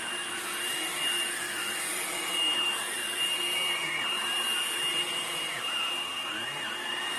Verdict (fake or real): fake